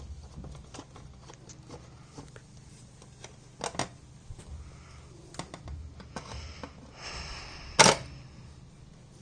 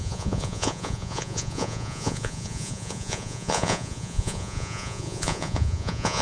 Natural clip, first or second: first